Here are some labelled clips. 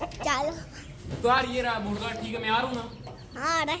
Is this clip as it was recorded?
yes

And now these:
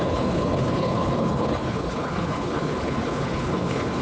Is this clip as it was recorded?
no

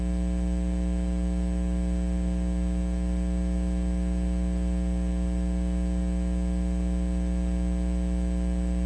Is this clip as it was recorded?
yes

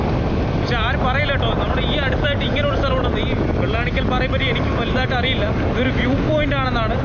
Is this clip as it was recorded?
yes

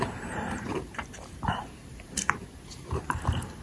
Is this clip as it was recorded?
no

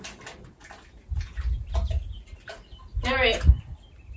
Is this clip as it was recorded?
yes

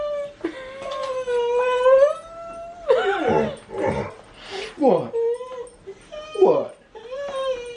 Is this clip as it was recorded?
yes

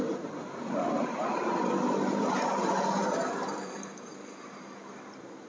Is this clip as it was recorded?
no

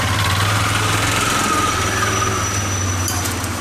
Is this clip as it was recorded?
yes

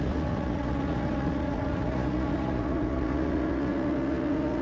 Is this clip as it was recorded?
no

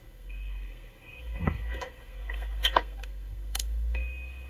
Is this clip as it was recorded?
no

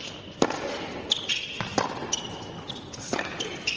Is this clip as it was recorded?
yes